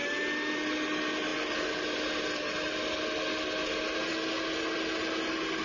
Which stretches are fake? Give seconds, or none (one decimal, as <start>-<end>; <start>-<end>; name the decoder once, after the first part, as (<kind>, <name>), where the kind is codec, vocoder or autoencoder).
none